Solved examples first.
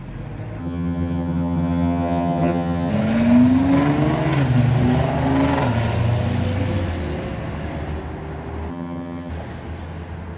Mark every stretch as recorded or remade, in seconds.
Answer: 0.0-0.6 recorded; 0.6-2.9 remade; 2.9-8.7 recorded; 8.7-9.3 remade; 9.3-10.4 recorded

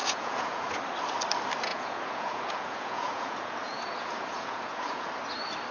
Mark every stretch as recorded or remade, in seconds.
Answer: 0.0-0.8 remade; 0.8-1.7 recorded; 1.7-5.1 remade; 5.1-5.7 recorded

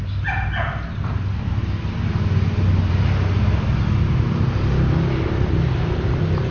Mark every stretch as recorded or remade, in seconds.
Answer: 0.0-6.5 recorded

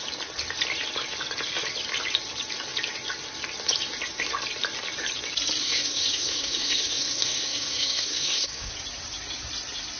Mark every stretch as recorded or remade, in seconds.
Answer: 0.0-5.6 recorded; 5.6-8.7 remade; 8.7-10.0 recorded